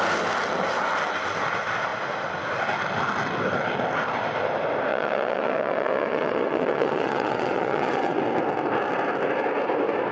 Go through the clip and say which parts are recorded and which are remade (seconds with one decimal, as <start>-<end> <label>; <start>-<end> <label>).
0.0-4.9 recorded; 4.9-8.2 remade; 8.2-10.1 recorded